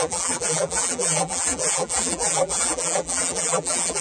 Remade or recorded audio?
remade